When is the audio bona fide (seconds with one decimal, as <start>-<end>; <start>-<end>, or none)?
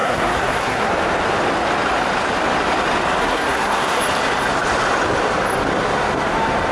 0.9-3.2; 4.0-6.7